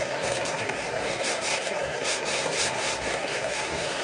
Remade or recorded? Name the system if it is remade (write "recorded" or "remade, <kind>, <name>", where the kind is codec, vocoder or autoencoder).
remade, codec, SNAC